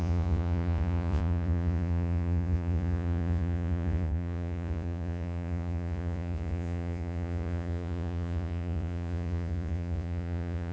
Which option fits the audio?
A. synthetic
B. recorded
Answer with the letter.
A